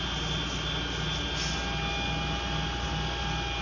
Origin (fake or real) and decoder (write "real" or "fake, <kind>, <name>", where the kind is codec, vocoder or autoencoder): real